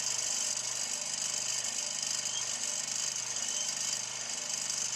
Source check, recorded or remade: recorded